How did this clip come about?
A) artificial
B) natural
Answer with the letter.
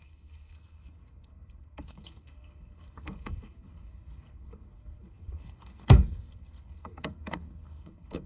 A